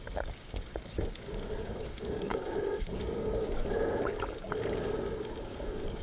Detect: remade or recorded remade